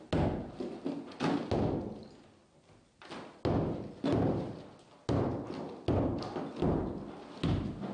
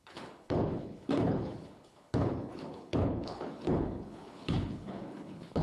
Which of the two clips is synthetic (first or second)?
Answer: second